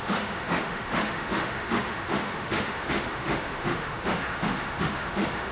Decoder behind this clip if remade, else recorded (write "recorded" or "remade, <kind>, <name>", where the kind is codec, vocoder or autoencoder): remade, autoencoder, DAC-VAE